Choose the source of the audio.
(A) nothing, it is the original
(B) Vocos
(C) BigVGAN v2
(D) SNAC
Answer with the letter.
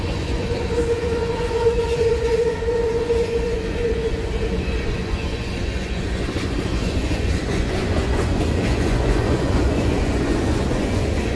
B